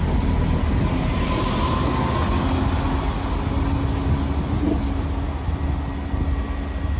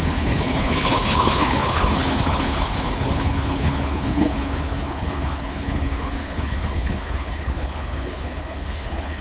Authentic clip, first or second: first